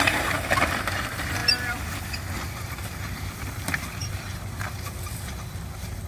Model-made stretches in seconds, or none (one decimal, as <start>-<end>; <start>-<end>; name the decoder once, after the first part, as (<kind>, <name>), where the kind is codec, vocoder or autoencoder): 4.0-4.6 (vocoder, BigVGAN v2)